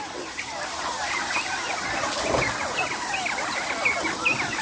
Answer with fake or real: real